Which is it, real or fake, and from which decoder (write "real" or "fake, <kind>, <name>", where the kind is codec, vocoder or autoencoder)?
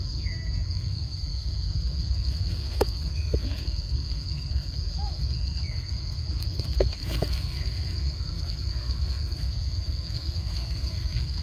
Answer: fake, codec, SNAC